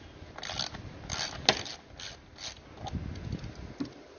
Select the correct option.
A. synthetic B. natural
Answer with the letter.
B